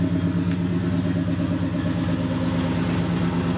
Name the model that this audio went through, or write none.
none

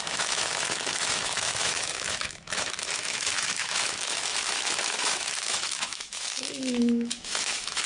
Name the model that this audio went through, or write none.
autoencoder, DAC-VAE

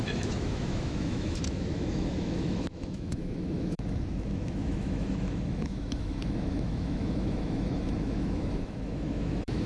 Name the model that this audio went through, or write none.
autoencoder, DAC-VAE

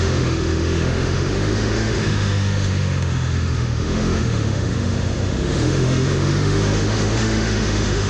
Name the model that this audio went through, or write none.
autoencoder, DAC-VAE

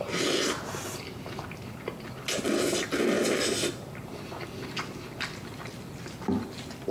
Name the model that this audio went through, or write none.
none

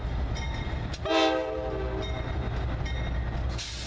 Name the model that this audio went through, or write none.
none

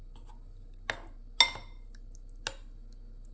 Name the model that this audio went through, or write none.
none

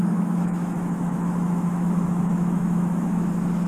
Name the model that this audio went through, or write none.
autoencoder, DAC-VAE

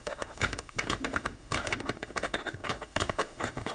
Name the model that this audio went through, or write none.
autoencoder, DAC-VAE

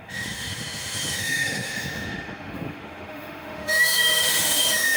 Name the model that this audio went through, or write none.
autoencoder, DAC-VAE